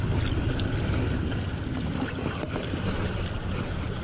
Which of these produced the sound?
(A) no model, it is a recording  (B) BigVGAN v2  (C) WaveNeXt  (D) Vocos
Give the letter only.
A